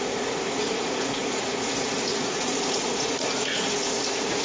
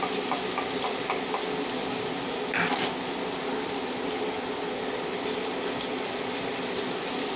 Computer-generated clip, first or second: first